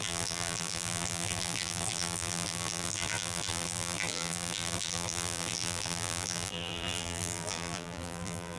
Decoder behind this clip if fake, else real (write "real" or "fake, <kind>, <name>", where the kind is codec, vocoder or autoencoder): fake, vocoder, BigVGAN v2